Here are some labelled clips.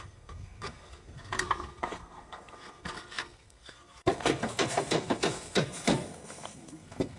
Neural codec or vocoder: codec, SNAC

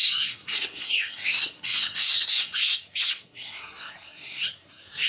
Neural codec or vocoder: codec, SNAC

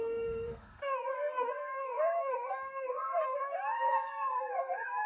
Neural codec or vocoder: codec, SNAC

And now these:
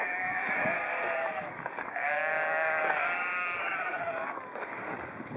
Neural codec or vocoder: codec, DAC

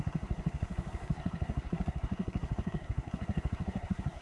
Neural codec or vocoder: codec, SNAC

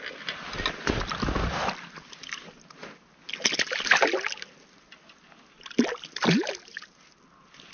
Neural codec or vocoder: none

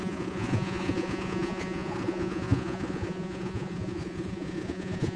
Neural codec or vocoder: vocoder, Vocos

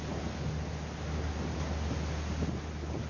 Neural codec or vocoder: none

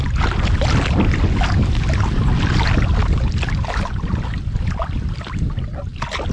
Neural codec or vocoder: none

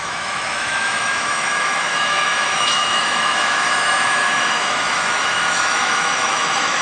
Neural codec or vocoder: autoencoder, DAC-VAE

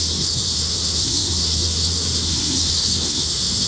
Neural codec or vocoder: codec, SNAC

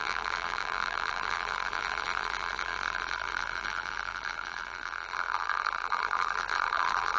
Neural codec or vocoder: vocoder, BigVGAN v2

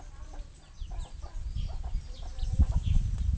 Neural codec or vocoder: none